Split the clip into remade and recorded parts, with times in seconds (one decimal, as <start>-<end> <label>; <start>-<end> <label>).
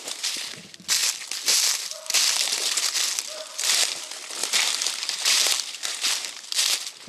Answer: 0.0-4.4 recorded; 4.4-6.6 remade; 6.6-7.1 recorded